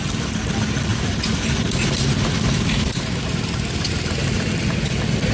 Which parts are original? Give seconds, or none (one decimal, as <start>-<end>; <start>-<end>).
0.0-5.3